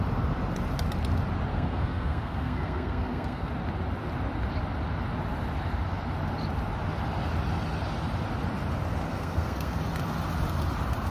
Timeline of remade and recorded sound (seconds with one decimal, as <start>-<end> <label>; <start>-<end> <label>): 0.0-1.5 recorded; 1.5-3.5 remade; 3.5-9.1 recorded; 9.1-9.8 remade; 9.8-11.1 recorded